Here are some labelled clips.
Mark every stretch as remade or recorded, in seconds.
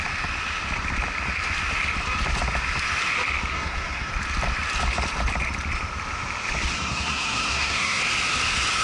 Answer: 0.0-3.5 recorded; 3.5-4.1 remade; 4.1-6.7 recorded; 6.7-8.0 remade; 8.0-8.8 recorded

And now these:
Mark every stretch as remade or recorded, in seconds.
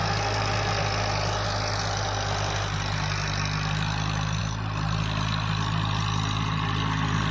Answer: 0.0-7.3 recorded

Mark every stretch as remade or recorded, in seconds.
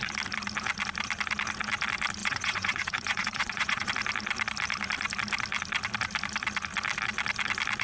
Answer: 0.0-2.2 recorded; 2.2-3.9 remade; 3.9-7.8 recorded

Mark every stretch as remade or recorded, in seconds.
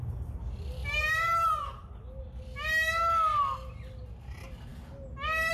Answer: 0.0-0.8 recorded; 0.8-1.9 remade; 1.9-5.5 recorded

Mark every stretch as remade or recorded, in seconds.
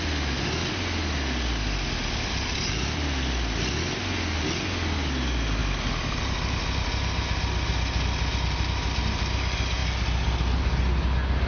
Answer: 0.0-11.5 recorded